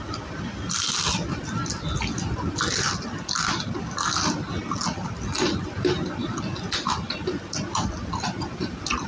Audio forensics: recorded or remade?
recorded